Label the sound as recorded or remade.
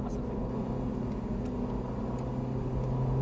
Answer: recorded